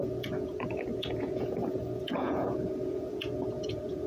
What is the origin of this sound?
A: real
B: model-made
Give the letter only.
B